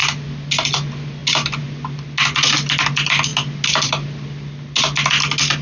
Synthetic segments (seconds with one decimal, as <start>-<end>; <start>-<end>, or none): none